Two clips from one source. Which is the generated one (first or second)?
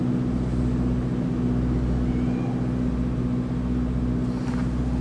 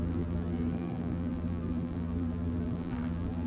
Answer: second